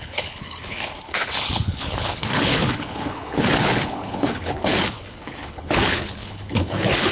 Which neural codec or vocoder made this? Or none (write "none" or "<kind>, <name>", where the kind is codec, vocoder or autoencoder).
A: codec, HILCodec